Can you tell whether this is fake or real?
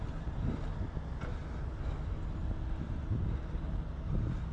real